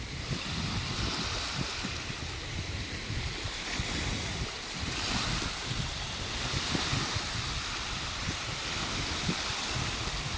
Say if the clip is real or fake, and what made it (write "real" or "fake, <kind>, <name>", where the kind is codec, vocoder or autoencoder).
real